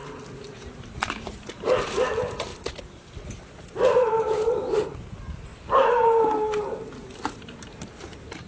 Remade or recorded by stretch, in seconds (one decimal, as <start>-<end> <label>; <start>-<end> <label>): 0.0-2.5 remade; 2.5-4.1 recorded; 4.1-8.5 remade

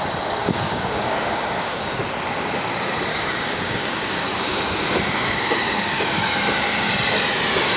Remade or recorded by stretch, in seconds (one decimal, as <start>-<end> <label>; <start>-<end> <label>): 0.0-0.4 recorded; 0.4-2.0 remade; 2.0-3.1 recorded; 3.1-6.2 remade; 6.2-7.8 recorded